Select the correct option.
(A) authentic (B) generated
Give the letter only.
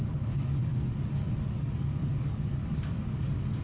B